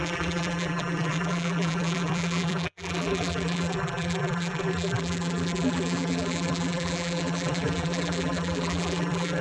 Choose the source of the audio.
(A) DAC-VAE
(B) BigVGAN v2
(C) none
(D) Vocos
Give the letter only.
B